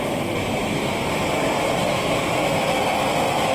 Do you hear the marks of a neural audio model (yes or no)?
no